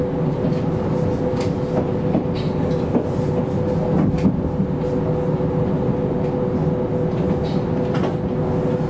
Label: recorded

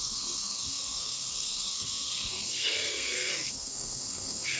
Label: remade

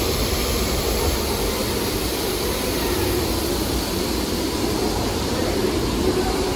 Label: remade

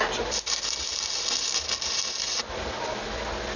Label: recorded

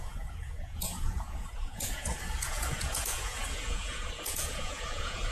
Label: remade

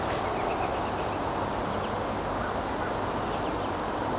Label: recorded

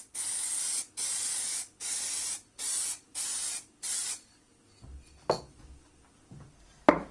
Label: recorded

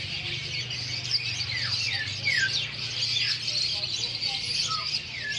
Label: recorded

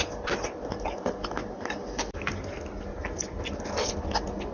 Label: recorded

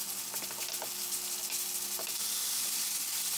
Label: recorded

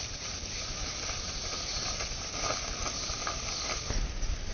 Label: recorded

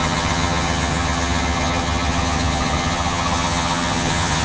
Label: remade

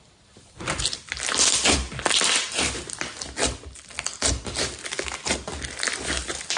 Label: recorded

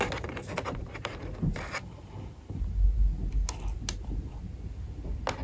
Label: recorded